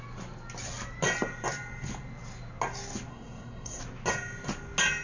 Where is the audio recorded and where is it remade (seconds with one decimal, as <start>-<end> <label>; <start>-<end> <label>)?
0.0-3.1 recorded; 3.1-3.8 remade; 3.8-5.0 recorded